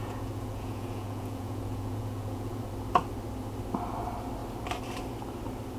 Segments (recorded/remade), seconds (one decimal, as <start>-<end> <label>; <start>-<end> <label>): 0.0-2.7 remade; 2.7-5.8 recorded